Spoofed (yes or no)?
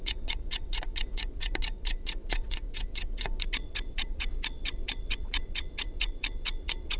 yes